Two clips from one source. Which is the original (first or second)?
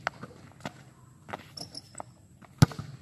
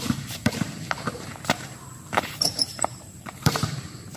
first